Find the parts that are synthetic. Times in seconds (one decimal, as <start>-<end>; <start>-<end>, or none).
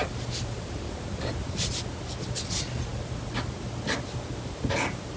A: 0.0-1.7